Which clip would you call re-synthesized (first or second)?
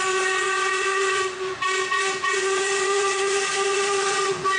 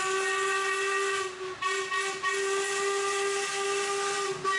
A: first